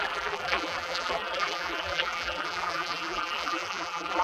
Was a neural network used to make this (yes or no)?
yes